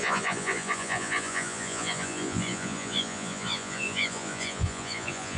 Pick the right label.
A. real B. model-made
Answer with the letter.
B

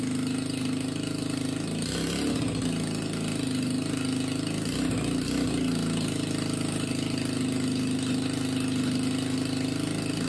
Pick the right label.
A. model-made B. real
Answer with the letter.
B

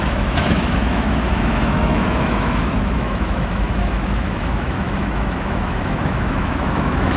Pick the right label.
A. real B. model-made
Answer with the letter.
B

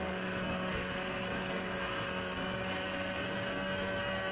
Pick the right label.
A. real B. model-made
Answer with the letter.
B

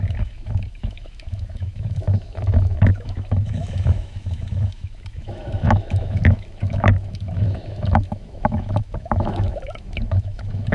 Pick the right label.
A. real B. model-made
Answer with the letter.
B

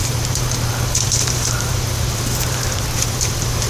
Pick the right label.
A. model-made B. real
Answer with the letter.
A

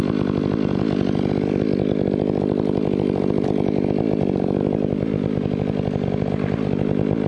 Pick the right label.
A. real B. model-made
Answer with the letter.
A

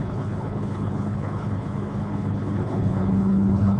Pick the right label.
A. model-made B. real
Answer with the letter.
A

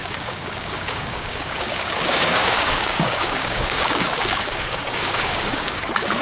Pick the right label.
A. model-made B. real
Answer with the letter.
A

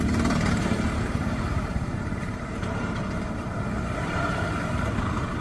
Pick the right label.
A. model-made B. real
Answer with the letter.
A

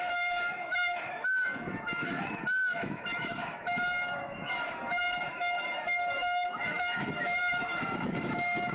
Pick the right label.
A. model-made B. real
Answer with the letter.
A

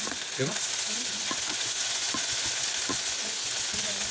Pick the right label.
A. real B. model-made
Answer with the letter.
B